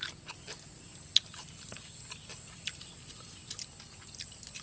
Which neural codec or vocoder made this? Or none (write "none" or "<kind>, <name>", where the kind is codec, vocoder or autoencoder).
none